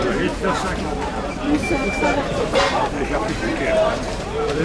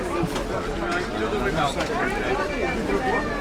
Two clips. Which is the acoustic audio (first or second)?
second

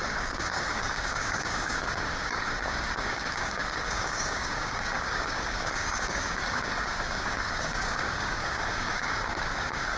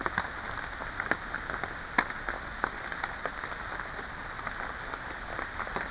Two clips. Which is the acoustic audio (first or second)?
second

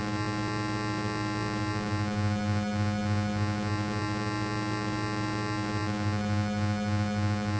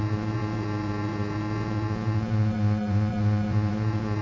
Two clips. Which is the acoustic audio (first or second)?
first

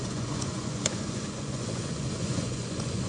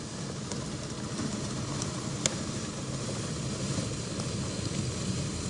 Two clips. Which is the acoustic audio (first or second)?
second